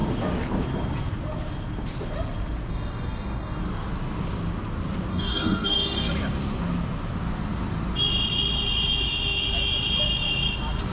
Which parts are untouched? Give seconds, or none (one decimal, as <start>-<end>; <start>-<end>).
0.0-2.7; 3.6-5.1; 6.1-10.9